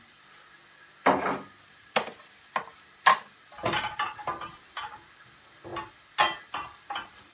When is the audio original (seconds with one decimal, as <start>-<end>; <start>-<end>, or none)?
0.0-7.3